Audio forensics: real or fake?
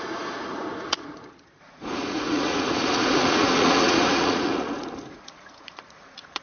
fake